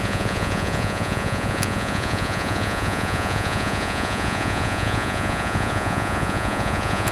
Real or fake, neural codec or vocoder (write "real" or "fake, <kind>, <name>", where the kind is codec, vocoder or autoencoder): fake, vocoder, Vocos